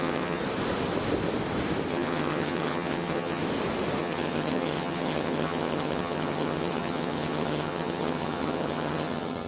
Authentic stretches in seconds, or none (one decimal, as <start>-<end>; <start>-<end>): 0.4-1.9; 3.4-4.0